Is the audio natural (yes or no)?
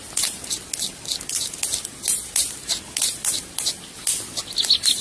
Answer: yes